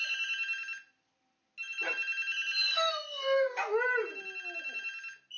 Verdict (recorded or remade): recorded